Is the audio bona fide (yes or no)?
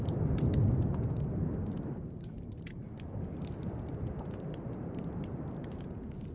yes